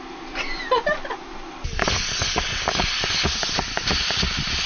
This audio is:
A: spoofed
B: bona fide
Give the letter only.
B